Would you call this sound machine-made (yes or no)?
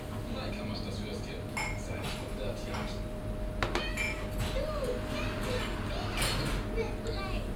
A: no